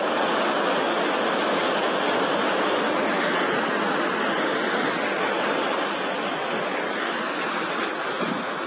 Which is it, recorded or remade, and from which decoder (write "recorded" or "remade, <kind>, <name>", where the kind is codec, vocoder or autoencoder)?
recorded